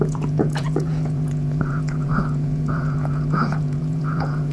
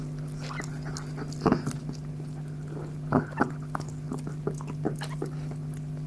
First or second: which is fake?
first